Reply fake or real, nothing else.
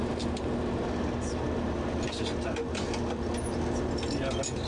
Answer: real